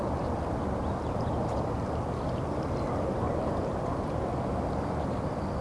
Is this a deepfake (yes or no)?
no